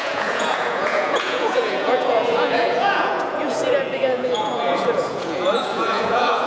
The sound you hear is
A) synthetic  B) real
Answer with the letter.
A